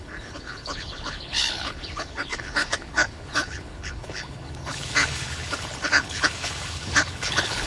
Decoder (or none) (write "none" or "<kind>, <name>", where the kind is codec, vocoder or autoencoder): codec, HILCodec